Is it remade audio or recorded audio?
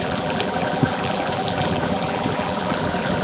remade